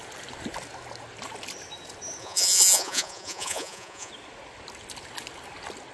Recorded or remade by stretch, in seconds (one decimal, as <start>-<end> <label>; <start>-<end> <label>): 0.0-2.2 recorded; 2.2-4.1 remade; 4.1-5.9 recorded